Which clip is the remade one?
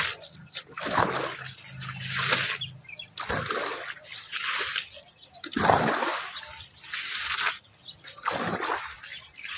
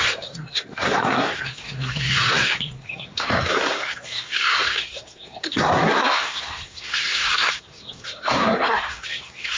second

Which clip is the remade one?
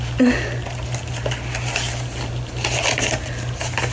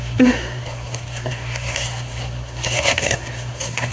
second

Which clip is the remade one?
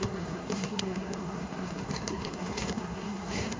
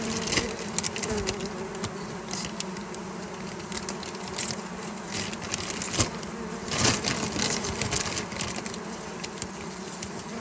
first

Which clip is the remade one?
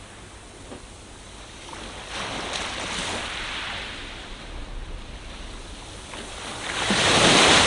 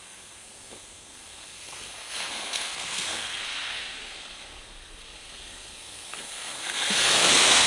second